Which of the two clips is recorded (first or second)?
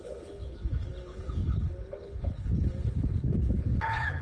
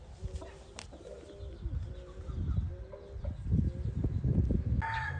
second